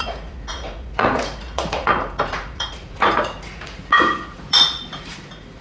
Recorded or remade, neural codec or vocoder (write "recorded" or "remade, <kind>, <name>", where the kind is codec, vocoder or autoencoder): remade, vocoder, Vocos